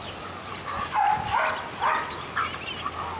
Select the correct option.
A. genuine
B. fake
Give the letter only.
A